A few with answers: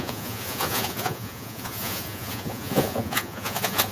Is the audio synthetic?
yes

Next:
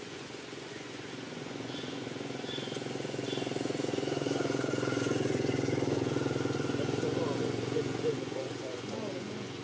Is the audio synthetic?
yes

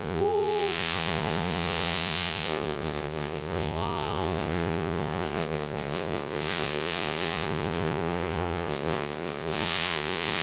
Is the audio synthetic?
yes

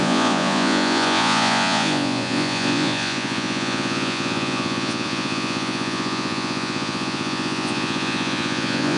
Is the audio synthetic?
yes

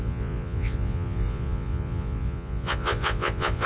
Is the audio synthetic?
yes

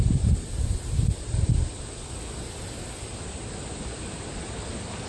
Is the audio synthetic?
no